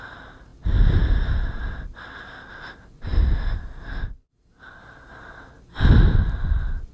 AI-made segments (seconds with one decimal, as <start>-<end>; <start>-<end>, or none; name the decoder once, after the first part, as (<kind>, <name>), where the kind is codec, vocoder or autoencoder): none